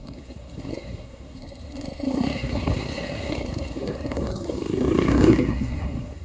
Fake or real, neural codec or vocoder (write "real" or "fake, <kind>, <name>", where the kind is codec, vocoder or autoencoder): fake, codec, SNAC